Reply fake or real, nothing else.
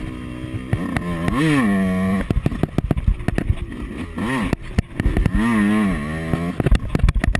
real